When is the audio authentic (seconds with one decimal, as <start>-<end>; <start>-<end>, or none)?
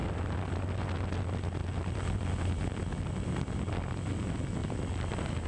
0.0-5.5